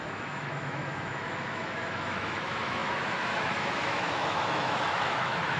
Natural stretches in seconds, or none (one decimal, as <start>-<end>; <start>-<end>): none